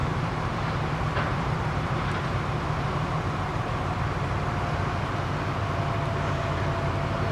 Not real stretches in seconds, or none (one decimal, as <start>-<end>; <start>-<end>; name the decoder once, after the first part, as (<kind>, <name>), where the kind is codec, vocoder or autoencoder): 0.0-0.9 (vocoder, BigVGAN v2); 1.3-4.8